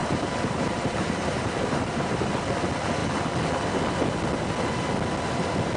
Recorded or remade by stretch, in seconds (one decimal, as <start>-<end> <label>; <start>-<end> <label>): 0.0-2.3 remade; 2.3-5.8 recorded